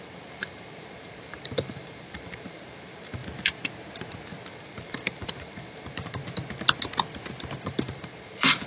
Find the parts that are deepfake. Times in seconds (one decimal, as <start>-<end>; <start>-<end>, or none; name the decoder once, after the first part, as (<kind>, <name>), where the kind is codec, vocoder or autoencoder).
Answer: 0.0-3.2 (vocoder, BigVGAN v2); 4.5-6.2; 7.6-8.7